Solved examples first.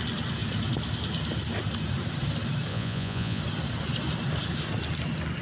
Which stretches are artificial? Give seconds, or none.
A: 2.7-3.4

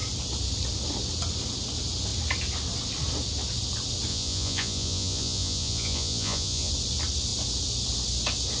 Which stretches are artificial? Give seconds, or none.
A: 4.1-6.7

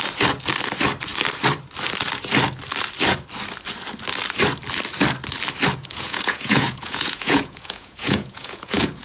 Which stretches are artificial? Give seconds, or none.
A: 5.8-9.0

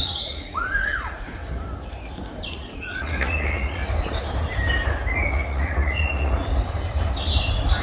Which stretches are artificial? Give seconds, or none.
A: 0.0-1.4; 2.5-3.8; 5.3-6.4

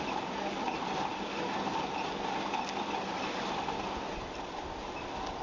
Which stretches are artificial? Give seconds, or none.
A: none